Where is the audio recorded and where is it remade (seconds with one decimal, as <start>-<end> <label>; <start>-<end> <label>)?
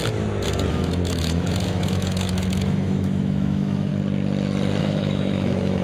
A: 0.0-0.7 recorded; 0.7-3.9 remade; 3.9-4.8 recorded; 4.8-5.8 remade